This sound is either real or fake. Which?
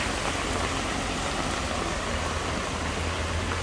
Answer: real